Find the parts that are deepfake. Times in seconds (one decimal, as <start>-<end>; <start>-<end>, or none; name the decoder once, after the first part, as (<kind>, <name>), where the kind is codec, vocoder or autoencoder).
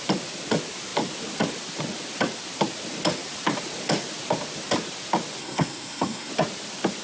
5.4-6.3 (codec, SNAC)